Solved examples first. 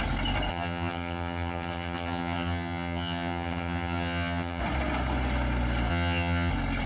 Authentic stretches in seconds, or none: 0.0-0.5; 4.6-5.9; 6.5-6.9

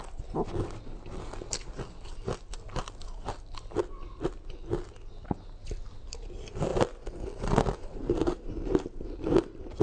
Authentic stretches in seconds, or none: 0.0-9.8

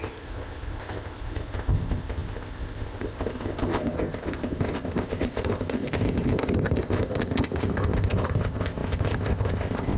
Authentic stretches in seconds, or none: none

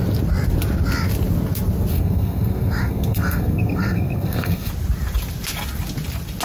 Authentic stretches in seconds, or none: 0.0-1.9; 4.7-6.4